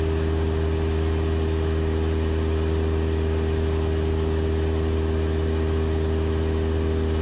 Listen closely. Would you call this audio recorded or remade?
recorded